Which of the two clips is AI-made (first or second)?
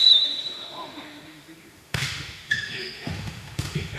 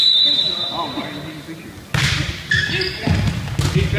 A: first